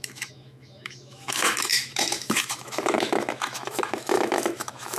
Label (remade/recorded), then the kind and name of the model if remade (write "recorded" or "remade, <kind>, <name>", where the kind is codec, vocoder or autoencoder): remade, autoencoder, DAC-VAE